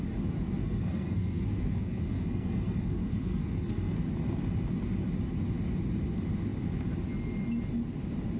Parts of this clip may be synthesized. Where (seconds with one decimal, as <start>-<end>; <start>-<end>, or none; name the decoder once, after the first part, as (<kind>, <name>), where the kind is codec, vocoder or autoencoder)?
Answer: 0.6-4.0 (codec, SNAC)